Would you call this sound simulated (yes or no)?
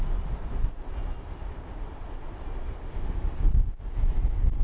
no